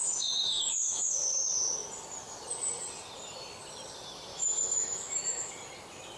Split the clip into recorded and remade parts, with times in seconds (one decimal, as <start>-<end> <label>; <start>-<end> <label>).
0.0-1.4 remade; 1.4-4.3 recorded; 4.3-5.5 remade; 5.5-6.2 recorded